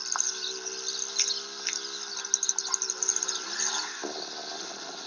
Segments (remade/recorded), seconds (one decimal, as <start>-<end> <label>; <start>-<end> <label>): 0.0-5.1 recorded